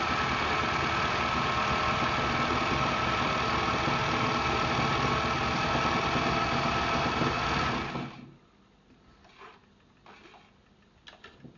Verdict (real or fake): real